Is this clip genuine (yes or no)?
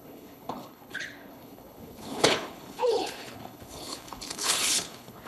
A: no